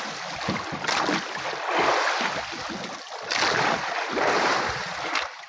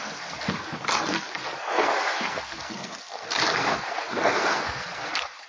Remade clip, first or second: second